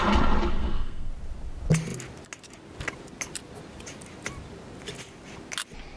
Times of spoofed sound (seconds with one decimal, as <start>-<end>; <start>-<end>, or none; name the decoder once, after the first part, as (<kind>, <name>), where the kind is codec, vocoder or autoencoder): 0.6-1.1 (codec, SNAC)